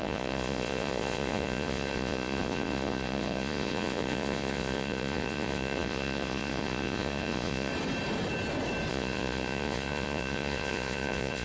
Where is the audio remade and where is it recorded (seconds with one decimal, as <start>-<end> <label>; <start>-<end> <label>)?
0.0-7.7 remade; 7.7-8.9 recorded; 8.9-11.4 remade